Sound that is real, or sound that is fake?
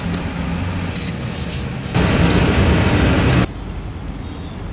real